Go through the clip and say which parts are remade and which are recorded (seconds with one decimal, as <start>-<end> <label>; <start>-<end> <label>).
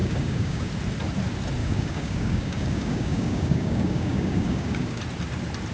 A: 0.0-0.7 remade; 0.7-1.6 recorded; 1.6-5.0 remade; 5.0-5.7 recorded